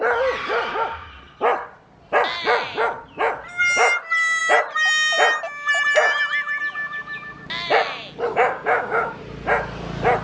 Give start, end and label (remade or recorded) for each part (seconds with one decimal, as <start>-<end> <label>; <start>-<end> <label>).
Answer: 0.0-8.3 recorded; 8.3-9.1 remade; 9.1-10.2 recorded